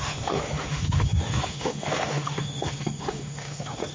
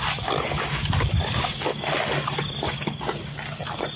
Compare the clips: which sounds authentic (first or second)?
second